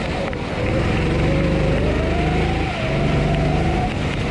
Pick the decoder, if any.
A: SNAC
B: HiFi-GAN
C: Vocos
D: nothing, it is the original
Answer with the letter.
D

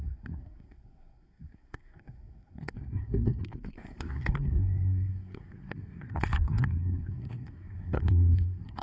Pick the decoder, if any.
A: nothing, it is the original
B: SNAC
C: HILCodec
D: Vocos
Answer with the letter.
B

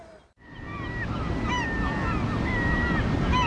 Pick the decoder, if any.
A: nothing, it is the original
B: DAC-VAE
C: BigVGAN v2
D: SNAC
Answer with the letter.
A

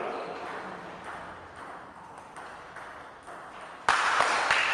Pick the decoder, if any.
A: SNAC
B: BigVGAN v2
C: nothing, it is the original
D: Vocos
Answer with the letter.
C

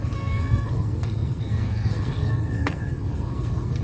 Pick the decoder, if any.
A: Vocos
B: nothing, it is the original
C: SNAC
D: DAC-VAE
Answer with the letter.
C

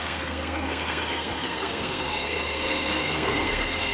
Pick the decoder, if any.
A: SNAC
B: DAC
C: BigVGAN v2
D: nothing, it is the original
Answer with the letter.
A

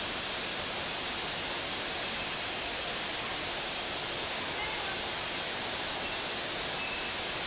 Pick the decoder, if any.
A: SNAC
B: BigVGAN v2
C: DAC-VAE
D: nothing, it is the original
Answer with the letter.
D